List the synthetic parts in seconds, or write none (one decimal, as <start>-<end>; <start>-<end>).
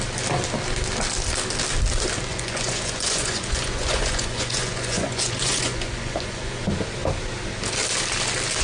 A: 2.3-6.6